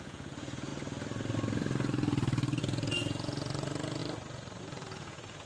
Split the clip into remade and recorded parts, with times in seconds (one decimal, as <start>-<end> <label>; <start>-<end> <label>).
0.0-0.7 remade; 0.7-2.6 recorded; 2.6-4.0 remade; 4.0-4.6 recorded; 4.6-5.5 remade